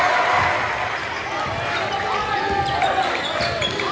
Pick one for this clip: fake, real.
real